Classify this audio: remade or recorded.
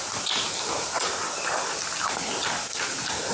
recorded